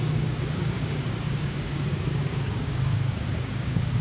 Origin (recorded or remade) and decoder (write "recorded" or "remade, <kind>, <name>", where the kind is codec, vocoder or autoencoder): remade, codec, DAC